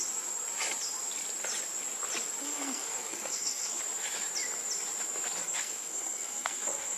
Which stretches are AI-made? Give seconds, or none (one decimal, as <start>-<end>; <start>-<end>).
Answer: 2.4-3.8; 5.4-7.0